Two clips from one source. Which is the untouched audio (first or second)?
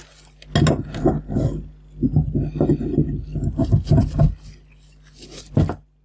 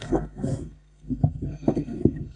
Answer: first